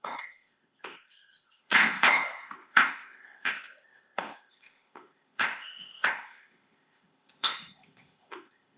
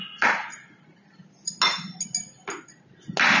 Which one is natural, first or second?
second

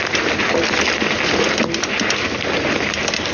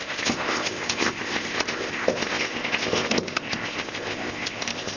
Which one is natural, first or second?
first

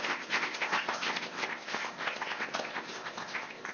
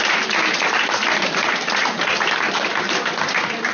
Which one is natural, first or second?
second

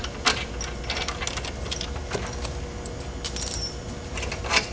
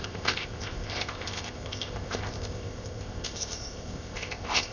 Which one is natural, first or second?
first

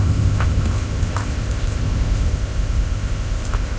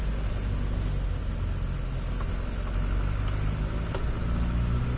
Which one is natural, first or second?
second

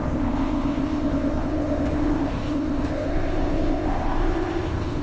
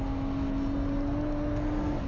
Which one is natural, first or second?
second